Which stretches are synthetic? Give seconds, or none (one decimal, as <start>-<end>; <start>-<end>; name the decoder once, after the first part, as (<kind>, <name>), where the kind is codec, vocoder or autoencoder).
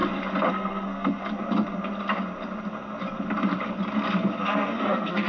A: 0.5-1.2 (codec, SNAC); 4.4-5.3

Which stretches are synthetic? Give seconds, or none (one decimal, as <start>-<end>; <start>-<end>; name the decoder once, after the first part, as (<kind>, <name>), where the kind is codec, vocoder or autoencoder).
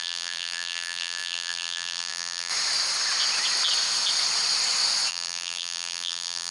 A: 0.0-2.5 (vocoder, BigVGAN v2); 5.1-6.5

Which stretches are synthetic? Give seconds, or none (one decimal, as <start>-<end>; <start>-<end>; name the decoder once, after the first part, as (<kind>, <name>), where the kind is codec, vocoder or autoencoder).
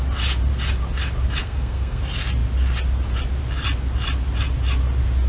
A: 1.4-2.0 (codec, SNAC)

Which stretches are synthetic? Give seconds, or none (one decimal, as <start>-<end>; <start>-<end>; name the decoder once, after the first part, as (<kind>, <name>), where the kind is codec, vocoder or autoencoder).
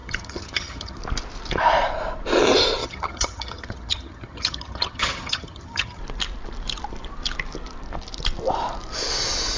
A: 0.0-1.0 (vocoder, HiFi-GAN); 2.8-6.0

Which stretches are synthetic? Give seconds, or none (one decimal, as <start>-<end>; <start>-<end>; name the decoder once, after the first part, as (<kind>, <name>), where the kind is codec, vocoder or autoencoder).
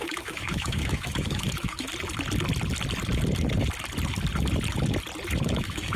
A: 0.0-1.9 (autoencoder, DAC-VAE); 5.5-6.0